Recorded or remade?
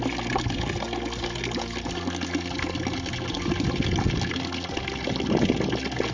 recorded